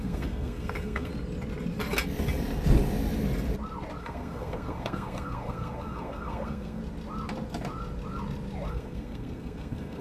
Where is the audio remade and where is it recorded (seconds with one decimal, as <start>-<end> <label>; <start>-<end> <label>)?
0.0-1.1 remade; 1.1-4.0 recorded; 4.0-6.8 remade; 6.8-8.7 recorded; 8.7-10.0 remade